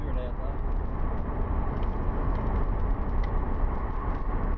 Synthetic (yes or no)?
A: no